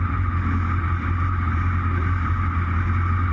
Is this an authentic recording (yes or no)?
yes